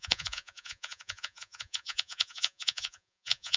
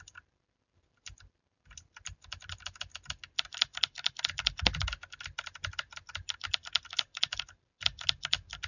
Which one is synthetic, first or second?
first